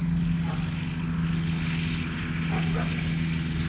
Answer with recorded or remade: recorded